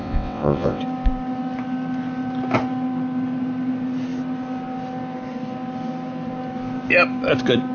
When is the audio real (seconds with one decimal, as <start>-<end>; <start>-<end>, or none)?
0.8-7.7